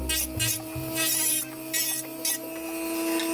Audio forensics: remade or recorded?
recorded